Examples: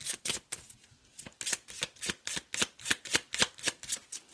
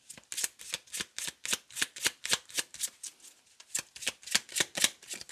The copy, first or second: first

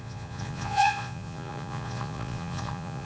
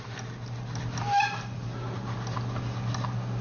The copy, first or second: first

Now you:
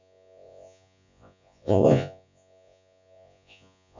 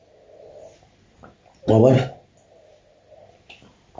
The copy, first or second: first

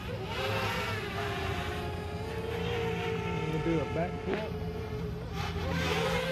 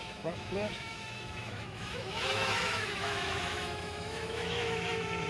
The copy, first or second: second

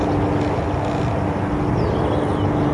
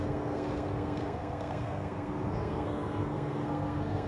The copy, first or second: second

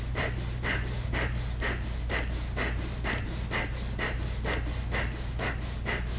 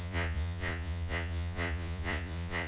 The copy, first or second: second